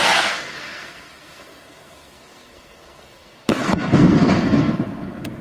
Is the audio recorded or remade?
remade